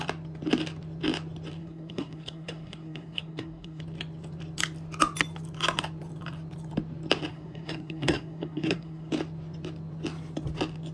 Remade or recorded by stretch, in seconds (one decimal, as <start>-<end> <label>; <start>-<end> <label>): 0.0-1.6 recorded; 1.6-3.8 remade; 3.8-7.3 recorded; 7.3-9.1 remade; 9.1-10.9 recorded